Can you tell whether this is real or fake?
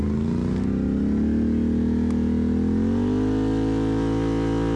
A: real